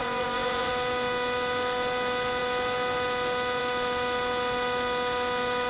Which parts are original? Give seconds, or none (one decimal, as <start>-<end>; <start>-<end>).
0.7-5.7